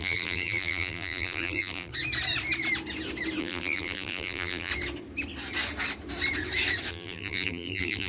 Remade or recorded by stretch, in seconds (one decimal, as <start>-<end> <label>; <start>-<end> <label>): 0.0-1.9 remade; 1.9-3.4 recorded; 3.4-4.7 remade; 4.7-6.9 recorded; 6.9-8.1 remade

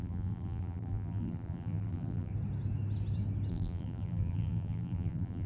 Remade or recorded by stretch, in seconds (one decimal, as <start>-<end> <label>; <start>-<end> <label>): 0.0-2.3 remade; 2.3-3.5 recorded; 3.5-5.5 remade

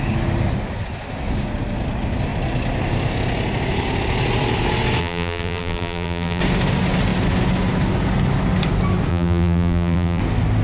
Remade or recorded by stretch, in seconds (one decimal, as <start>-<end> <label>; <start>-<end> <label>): 0.0-5.0 recorded; 5.0-6.4 remade; 6.4-9.1 recorded; 9.1-10.2 remade; 10.2-10.6 recorded

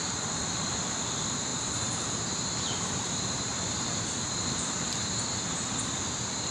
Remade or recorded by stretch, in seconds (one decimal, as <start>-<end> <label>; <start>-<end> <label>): 0.0-1.5 recorded; 1.5-5.4 remade; 5.4-6.5 recorded